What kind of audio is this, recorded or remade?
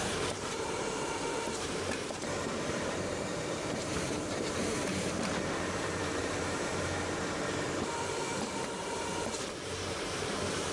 remade